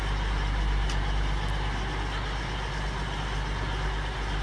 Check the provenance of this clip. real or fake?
real